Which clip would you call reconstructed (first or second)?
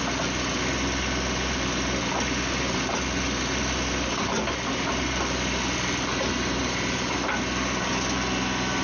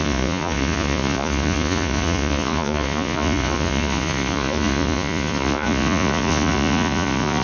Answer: second